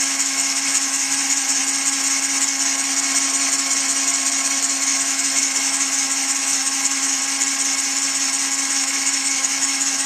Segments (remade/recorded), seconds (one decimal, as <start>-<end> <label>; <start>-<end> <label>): 0.0-1.6 remade; 1.6-4.8 recorded; 4.8-7.2 remade; 7.2-8.7 recorded; 8.7-10.1 remade